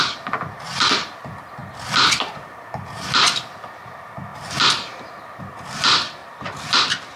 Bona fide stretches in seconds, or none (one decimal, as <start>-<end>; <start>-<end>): 1.6-2.6; 6.2-7.2